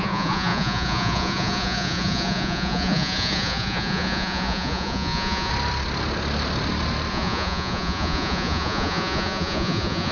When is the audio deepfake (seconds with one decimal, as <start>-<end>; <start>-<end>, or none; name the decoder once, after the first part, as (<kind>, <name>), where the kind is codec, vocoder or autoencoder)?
0.0-5.5 (vocoder, Vocos); 7.1-10.1